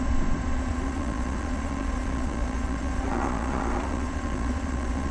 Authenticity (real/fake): fake